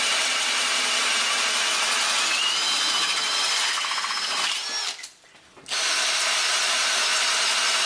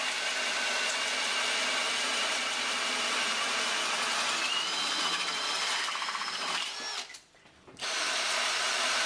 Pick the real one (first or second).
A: first